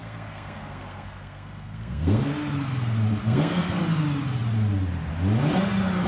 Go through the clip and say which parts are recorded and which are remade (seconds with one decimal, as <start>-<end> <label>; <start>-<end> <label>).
0.0-2.2 remade; 2.2-3.2 recorded; 3.2-3.8 remade; 3.8-6.1 recorded